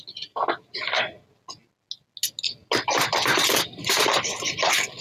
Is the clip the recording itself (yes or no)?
yes